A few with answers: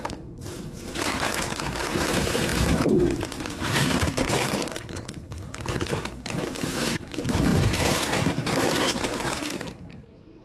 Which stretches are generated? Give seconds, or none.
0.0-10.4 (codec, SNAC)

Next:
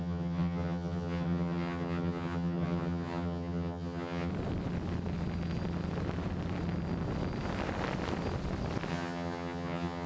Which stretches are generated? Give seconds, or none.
0.0-4.3 (vocoder, HiFi-GAN); 8.9-10.1

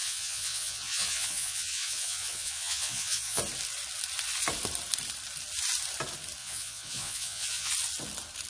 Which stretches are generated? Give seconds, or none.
0.0-3.4 (vocoder, Vocos); 6.4-7.7